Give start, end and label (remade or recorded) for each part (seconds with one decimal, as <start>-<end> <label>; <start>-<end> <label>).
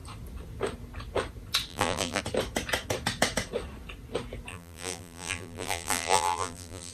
0.0-1.7 recorded; 1.7-2.2 remade; 2.2-4.5 recorded; 4.5-6.9 remade